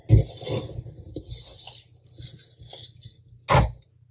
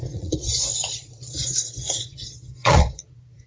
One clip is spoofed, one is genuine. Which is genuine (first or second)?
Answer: first